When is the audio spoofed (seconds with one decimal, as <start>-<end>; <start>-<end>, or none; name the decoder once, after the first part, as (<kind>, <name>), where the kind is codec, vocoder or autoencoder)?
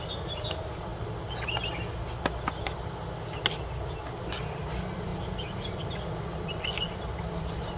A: 0.0-0.9 (vocoder, BigVGAN v2); 4.4-5.1; 6.5-7.8